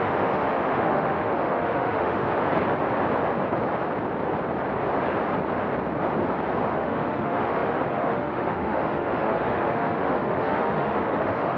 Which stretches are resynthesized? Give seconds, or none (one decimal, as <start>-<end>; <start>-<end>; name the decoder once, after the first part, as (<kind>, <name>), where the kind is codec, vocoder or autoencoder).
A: 0.0-2.3 (autoencoder, DAC-VAE); 6.7-11.6